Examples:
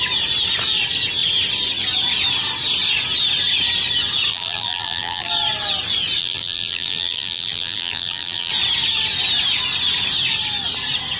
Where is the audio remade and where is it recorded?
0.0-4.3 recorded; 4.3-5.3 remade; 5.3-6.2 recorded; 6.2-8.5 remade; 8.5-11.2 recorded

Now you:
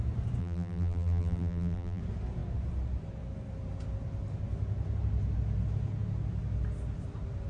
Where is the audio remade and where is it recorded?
0.0-0.4 recorded; 0.4-2.0 remade; 2.0-7.5 recorded

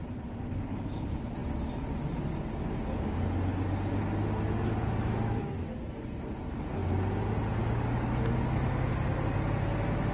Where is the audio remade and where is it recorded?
0.0-10.1 recorded

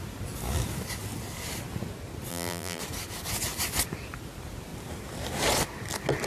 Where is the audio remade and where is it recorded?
0.0-2.3 recorded; 2.3-2.8 remade; 2.8-6.3 recorded

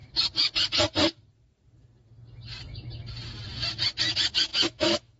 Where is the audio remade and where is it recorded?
0.0-4.5 recorded; 4.5-5.2 remade

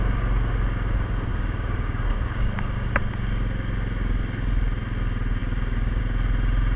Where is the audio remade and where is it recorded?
0.0-1.3 recorded; 1.3-2.9 remade; 2.9-5.4 recorded; 5.4-6.0 remade; 6.0-6.8 recorded

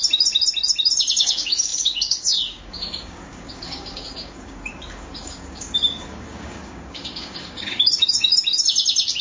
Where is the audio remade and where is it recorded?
0.0-1.1 recorded; 1.1-8.3 remade; 8.3-9.2 recorded

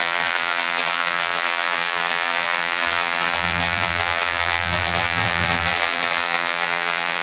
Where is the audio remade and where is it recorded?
0.0-7.2 remade